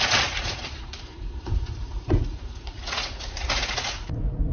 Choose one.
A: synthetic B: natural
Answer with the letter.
A